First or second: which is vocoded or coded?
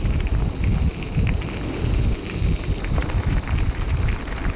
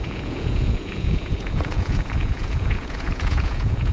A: second